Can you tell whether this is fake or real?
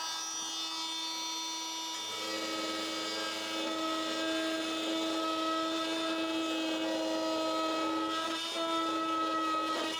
real